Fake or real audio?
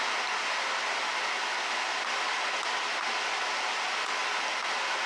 real